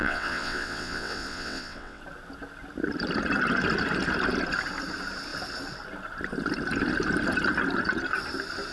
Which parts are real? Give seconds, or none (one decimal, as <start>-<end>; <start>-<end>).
2.0-8.7